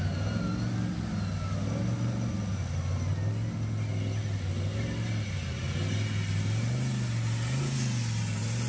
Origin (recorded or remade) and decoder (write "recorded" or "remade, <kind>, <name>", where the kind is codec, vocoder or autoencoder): recorded